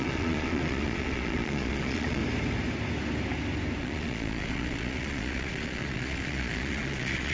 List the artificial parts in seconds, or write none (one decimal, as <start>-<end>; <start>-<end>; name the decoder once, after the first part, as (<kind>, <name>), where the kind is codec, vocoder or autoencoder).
0.0-2.2 (vocoder, Vocos); 3.8-7.3

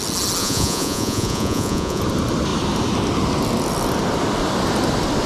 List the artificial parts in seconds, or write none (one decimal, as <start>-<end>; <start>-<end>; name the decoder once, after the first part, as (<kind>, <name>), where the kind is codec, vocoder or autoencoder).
0.4-2.0 (vocoder, Vocos)

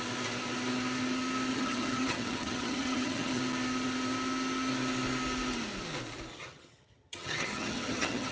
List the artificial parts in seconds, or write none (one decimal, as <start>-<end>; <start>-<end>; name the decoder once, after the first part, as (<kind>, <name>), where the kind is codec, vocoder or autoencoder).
1.5-3.4 (vocoder, HiFi-GAN); 6.3-8.3

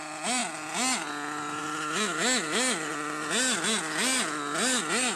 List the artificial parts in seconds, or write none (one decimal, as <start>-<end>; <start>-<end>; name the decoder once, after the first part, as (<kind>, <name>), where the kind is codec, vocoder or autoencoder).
none

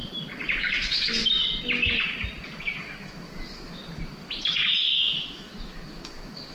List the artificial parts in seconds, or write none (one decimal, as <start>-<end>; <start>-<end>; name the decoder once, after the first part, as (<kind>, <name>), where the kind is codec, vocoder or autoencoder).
0.6-1.2 (autoencoder, DAC-VAE); 2.8-3.8; 5.0-6.5

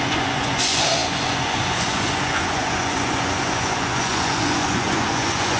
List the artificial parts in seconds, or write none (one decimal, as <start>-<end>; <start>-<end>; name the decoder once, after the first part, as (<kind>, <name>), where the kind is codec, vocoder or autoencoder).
0.0-5.6 (vocoder, Vocos)